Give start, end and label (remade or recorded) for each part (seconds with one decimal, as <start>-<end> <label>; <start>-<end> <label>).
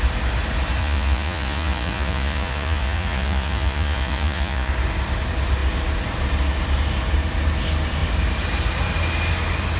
0.0-0.8 recorded; 0.8-4.7 remade; 4.7-9.8 recorded